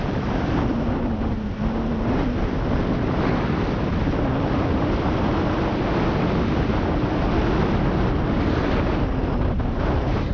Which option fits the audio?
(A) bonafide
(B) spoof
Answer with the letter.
A